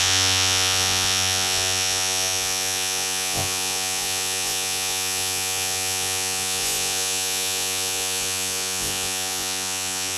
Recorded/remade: remade